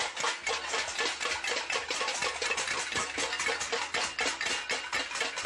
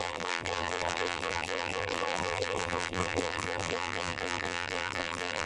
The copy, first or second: second